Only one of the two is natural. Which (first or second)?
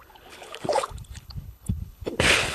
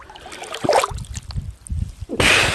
second